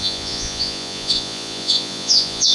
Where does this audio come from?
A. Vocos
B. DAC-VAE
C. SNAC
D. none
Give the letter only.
A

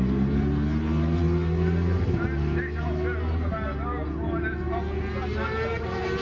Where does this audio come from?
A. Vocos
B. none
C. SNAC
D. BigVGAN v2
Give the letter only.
B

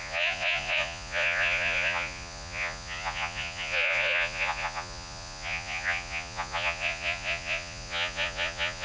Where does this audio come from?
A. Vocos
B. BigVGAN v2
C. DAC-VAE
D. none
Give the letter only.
A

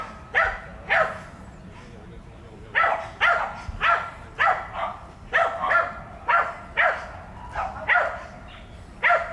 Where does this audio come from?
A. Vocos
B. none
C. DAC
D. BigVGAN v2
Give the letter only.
B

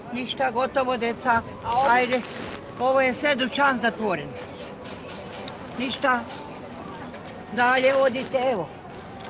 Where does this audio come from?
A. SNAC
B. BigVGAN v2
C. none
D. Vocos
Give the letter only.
C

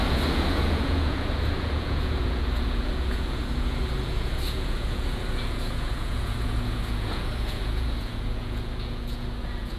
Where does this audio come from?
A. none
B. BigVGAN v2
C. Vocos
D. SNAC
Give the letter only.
C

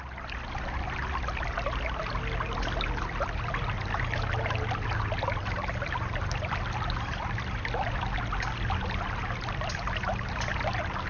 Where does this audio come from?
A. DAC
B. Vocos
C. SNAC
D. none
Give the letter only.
D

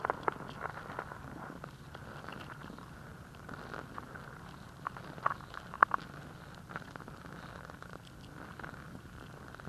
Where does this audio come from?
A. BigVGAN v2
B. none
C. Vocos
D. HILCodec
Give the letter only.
B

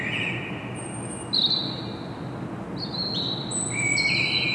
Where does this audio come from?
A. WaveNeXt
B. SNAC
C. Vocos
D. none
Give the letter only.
D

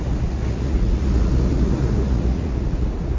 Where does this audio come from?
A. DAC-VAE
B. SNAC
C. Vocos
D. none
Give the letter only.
C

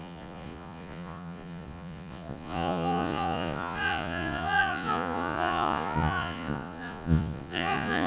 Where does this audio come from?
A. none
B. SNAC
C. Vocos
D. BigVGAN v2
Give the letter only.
C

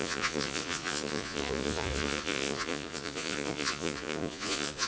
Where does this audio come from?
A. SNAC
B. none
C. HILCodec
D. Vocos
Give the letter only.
D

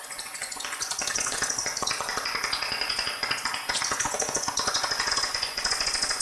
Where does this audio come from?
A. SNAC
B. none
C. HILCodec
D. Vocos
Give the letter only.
D